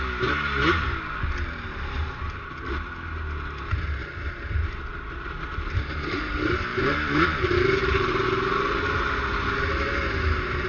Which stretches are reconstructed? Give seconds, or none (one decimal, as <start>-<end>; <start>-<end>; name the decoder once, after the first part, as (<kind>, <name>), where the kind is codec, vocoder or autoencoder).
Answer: 6.7-8.8 (vocoder, BigVGAN v2)